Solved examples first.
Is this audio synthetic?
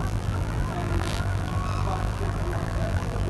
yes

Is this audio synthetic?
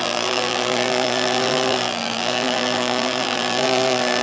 yes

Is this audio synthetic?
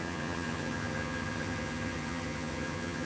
yes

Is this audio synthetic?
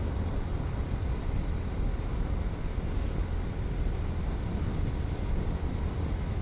no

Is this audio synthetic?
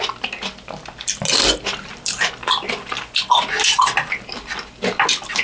no